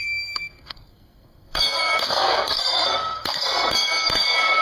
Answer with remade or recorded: remade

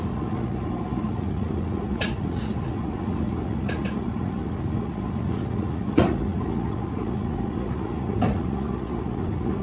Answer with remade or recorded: remade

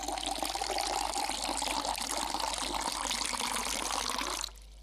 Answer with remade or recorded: recorded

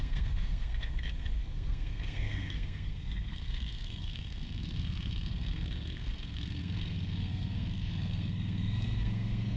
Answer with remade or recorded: remade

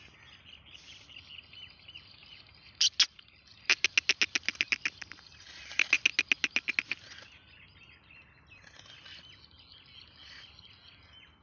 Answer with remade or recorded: recorded